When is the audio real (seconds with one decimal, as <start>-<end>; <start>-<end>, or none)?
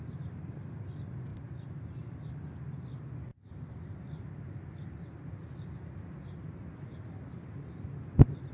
0.0-1.3; 2.1-3.3; 6.7-8.5